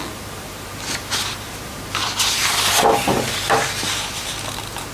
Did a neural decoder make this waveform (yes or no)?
no